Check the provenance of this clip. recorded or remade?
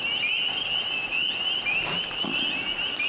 recorded